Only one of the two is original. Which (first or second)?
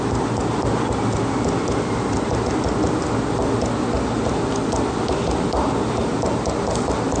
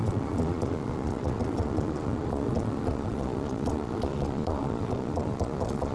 first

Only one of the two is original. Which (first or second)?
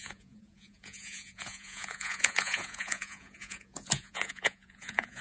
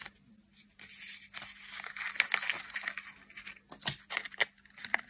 second